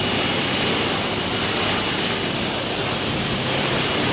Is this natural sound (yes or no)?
no